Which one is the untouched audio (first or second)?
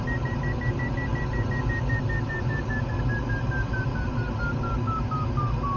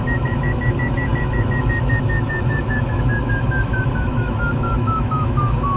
first